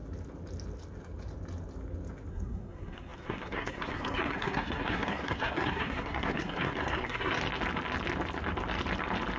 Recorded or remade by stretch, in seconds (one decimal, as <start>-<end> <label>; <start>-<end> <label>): 0.0-2.3 recorded; 2.3-7.4 remade; 7.4-9.4 recorded